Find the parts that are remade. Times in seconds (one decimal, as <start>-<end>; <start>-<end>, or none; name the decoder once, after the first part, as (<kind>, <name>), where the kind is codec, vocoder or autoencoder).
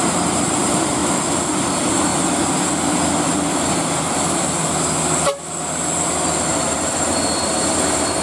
0.0-1.0 (vocoder, BigVGAN v2); 1.5-2.1; 6.6-8.2